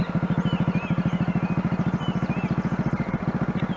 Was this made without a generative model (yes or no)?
yes